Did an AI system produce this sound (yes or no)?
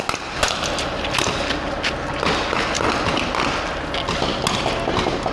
no